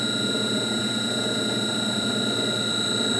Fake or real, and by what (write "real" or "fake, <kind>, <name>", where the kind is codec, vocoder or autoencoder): real